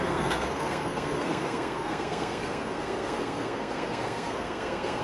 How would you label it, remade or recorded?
remade